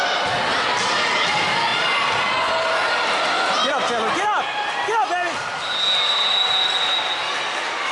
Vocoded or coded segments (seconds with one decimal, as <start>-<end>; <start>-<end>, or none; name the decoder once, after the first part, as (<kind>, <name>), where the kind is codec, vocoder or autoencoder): none